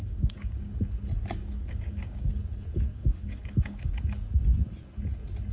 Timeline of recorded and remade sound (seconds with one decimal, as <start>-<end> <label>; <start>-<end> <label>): 0.0-0.8 remade; 0.8-1.4 recorded; 1.4-2.3 remade; 2.3-2.9 recorded; 2.9-4.0 remade; 4.0-5.5 recorded